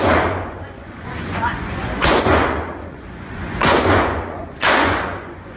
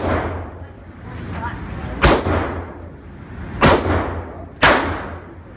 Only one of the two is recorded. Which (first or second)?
second